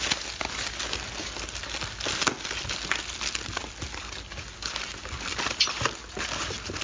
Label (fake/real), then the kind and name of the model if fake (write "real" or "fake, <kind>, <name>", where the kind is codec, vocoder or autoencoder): real